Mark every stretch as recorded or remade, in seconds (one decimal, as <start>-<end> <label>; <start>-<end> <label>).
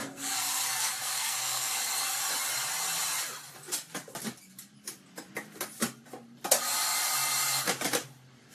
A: 0.0-2.2 remade; 2.2-8.5 recorded